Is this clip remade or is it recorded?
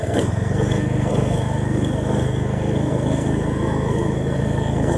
remade